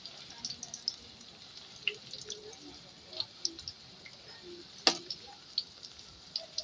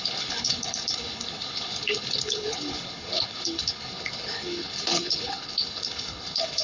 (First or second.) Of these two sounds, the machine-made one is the second